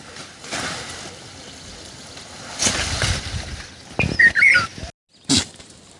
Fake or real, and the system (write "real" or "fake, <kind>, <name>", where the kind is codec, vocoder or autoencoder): real